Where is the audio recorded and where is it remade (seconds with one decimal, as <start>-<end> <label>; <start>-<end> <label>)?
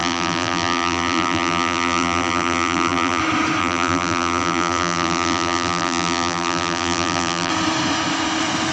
0.0-3.2 remade; 3.2-3.6 recorded; 3.6-7.5 remade; 7.5-8.7 recorded